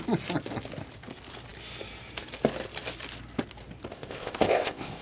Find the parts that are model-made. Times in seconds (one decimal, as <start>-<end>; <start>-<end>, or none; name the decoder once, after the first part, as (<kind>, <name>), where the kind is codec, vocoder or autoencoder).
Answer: 3.9-5.0 (codec, ZipCodec)